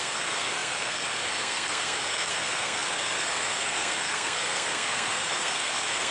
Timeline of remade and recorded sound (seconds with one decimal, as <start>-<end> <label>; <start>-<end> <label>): 0.0-6.1 remade